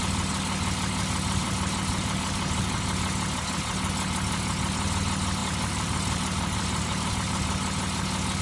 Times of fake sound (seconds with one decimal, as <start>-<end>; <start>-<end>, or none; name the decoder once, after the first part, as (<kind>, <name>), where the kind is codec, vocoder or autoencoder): 5.4-7.1 (vocoder, BigVGAN v2)